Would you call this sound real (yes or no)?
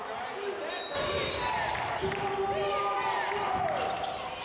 yes